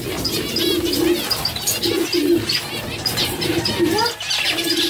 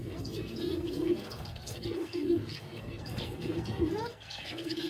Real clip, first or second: first